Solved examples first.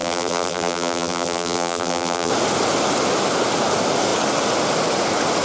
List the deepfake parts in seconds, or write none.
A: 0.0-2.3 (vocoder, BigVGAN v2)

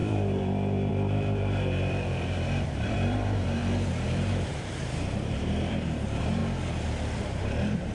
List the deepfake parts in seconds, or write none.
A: 0.0-6.4 (vocoder, BigVGAN v2); 7.2-7.9

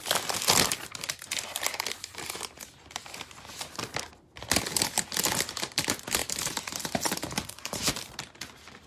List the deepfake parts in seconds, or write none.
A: 6.2-8.1 (vocoder, BigVGAN v2)